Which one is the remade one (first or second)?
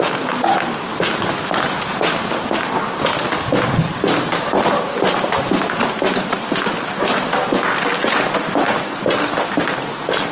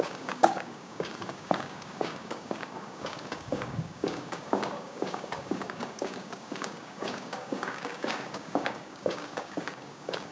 second